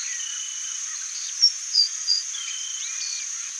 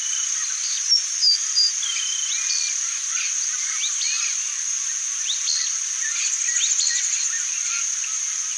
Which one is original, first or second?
second